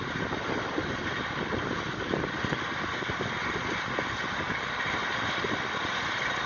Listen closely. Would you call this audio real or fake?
real